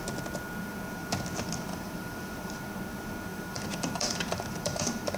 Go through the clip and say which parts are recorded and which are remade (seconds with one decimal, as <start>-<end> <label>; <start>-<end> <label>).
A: 0.0-1.7 recorded; 1.7-2.8 remade; 2.8-3.3 recorded; 3.3-5.2 remade